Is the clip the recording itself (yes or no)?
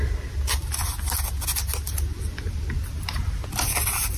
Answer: yes